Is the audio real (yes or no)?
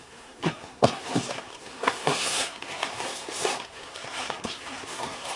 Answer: no